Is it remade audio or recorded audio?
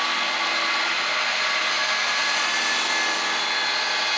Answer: recorded